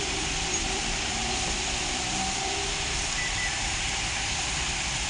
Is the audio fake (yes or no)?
yes